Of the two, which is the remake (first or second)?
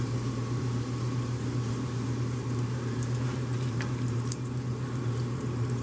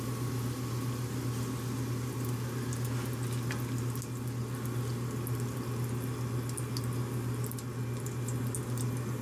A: first